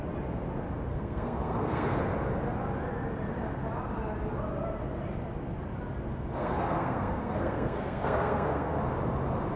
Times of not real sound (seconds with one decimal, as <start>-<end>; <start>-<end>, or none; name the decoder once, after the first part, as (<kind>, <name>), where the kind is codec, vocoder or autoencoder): 0.9-2.0 (codec, SNAC); 6.4-8.8